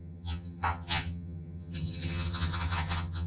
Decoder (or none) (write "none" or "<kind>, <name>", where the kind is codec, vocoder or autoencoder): vocoder, HiFi-GAN